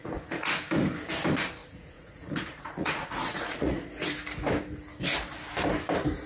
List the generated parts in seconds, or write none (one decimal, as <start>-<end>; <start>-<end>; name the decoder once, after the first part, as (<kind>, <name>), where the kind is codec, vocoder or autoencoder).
0.0-0.5 (vocoder, Vocos); 1.6-3.9